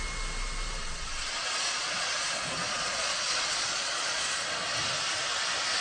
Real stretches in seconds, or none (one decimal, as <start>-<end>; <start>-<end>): 0.0-0.8; 4.3-5.8